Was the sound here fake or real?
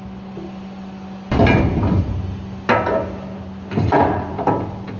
real